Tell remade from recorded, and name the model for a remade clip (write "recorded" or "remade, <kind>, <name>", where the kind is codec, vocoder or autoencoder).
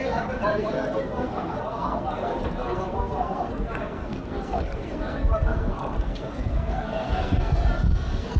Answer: remade, codec, SNAC